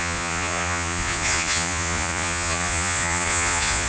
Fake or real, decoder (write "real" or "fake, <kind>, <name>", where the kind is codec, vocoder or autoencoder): fake, vocoder, Vocos